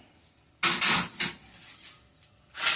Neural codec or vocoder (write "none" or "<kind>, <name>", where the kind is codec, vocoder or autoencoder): none